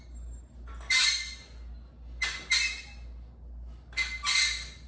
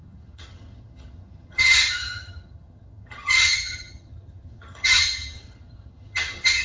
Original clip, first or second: first